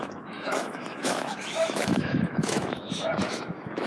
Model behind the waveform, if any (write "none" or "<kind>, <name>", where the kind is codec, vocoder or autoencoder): autoencoder, DAC-VAE